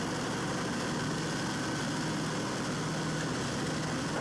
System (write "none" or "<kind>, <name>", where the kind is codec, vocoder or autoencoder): none